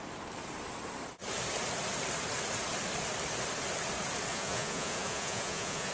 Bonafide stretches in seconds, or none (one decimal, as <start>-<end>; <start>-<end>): 0.0-4.3